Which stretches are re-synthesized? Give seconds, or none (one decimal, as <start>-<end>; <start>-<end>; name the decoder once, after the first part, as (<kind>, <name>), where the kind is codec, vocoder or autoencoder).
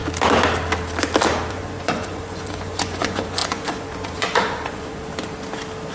1.5-5.1 (vocoder, Vocos)